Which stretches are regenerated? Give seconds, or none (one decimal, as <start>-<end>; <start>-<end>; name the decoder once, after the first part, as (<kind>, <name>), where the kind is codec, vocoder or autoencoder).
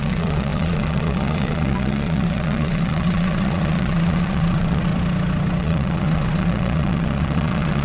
0.0-4.9 (vocoder, Vocos); 5.6-7.8